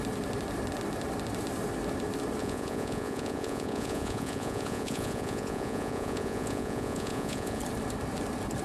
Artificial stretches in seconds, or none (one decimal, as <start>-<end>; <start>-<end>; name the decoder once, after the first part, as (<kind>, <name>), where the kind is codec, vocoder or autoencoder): 2.4-7.6 (vocoder, Vocos)